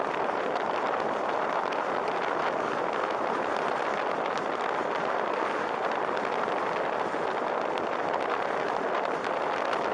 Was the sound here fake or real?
real